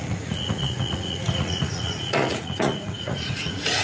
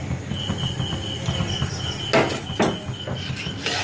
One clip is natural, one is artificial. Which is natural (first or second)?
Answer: second